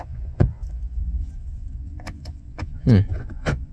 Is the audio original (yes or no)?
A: no